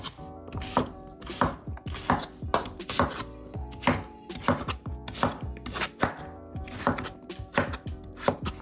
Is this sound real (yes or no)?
yes